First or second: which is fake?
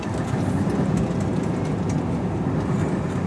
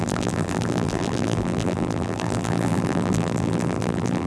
second